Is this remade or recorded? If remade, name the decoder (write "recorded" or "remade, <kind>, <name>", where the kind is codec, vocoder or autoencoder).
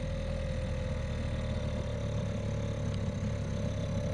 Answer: recorded